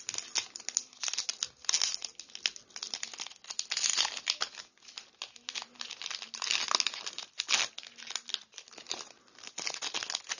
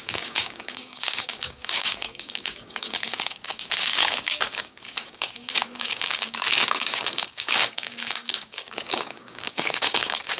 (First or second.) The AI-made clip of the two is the second